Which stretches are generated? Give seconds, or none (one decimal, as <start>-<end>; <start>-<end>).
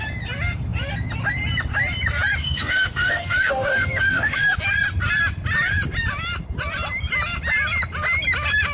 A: 2.4-4.6